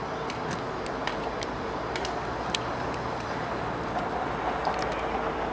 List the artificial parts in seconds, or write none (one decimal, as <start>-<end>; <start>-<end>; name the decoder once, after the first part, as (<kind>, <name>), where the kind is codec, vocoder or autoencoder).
1.0-4.3 (vocoder, BigVGAN v2)